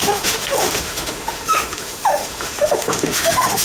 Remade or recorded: remade